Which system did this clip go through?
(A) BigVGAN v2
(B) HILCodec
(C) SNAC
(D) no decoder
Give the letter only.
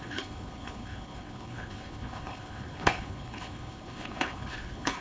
B